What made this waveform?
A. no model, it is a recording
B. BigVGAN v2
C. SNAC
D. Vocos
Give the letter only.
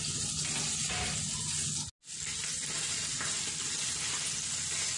A